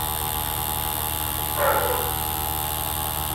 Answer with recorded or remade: recorded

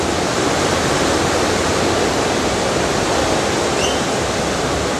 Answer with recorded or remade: recorded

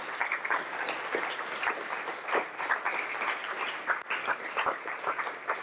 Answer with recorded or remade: recorded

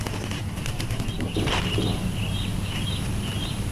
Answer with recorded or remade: recorded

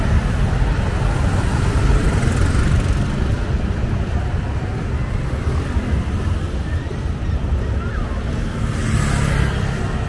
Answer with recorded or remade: recorded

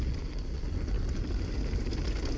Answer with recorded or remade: recorded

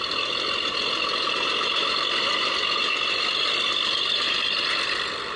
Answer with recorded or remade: recorded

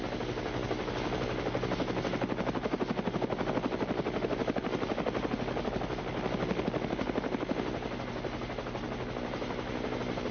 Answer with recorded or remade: recorded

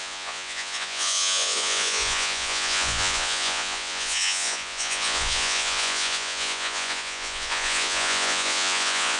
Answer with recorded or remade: remade